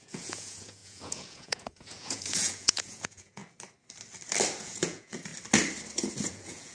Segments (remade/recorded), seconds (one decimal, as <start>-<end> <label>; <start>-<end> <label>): 0.0-3.4 remade; 3.4-4.6 recorded; 4.6-5.3 remade; 5.3-6.3 recorded; 6.3-6.7 remade